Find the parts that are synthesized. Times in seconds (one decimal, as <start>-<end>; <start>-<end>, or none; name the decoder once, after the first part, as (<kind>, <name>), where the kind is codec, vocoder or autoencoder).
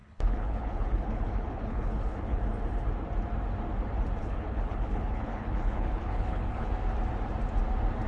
0.0-2.4 (codec, HILCodec); 4.2-6.7